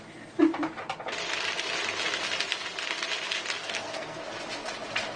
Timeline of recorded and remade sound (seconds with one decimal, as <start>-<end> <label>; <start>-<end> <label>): 0.0-3.6 recorded; 3.6-4.2 remade; 4.2-5.2 recorded